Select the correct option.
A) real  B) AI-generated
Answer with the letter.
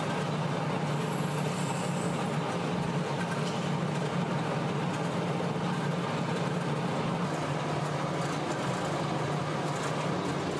A